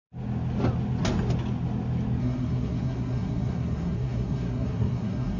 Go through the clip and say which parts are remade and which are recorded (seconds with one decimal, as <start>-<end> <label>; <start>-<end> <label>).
0.0-2.2 recorded; 2.2-5.4 remade